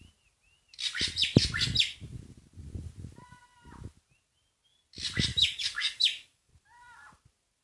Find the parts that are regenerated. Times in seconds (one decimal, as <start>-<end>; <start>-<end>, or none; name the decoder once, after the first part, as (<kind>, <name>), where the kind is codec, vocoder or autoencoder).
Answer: 5.3-6.5 (codec, DAC)